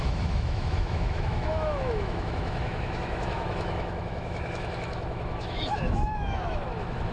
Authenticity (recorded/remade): remade